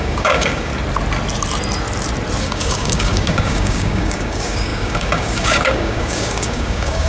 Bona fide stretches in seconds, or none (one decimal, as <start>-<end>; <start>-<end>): 0.7-2.4